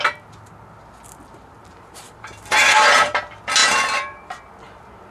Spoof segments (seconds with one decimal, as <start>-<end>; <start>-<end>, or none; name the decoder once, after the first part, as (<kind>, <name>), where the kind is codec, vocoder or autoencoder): 1.6-3.2 (vocoder, BigVGAN v2); 3.6-4.5